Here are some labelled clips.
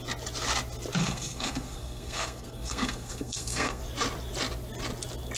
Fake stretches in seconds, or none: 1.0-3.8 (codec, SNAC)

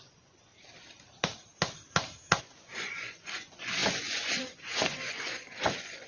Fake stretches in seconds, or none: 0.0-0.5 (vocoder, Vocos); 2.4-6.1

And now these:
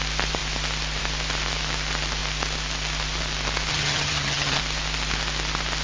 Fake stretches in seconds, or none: 3.7-4.6 (vocoder, HiFi-GAN)

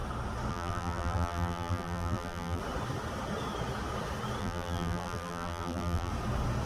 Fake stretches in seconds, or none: 0.5-2.6 (vocoder, BigVGAN v2); 4.4-6.1

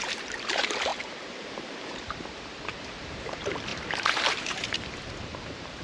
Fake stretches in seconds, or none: 0.0-5.8 (vocoder, BigVGAN v2)

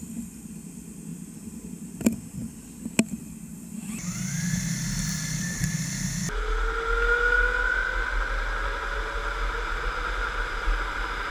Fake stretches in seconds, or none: none